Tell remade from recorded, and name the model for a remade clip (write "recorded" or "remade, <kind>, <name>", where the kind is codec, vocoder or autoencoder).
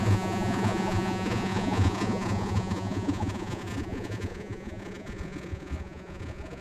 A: remade, vocoder, Vocos